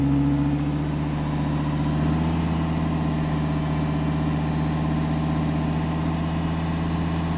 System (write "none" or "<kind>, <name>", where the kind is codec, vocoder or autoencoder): none